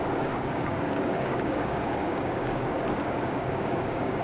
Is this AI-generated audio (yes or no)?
yes